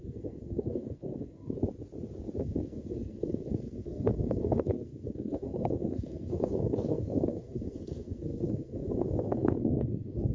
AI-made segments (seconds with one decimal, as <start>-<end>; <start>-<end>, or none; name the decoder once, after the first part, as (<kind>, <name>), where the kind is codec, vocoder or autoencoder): 0.0-1.6 (codec, SNAC); 2.4-10.3